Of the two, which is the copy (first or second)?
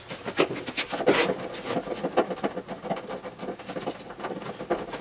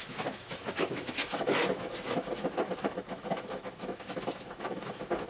second